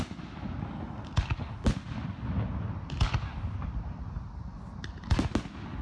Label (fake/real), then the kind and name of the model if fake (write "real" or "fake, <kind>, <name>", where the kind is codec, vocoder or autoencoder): real